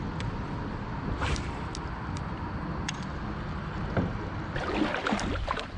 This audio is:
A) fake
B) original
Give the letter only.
B